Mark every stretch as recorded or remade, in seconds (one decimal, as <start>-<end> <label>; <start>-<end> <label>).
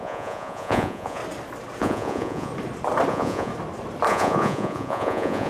0.0-1.2 remade; 1.2-1.8 recorded; 1.8-2.5 remade; 2.5-3.1 recorded; 3.1-3.5 remade; 3.5-4.1 recorded; 4.1-5.5 remade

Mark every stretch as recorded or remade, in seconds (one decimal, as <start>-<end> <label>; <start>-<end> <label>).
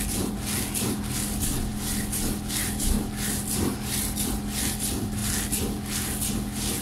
0.0-1.7 recorded; 1.7-3.4 remade; 3.4-6.8 recorded